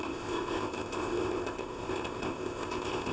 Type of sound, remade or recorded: remade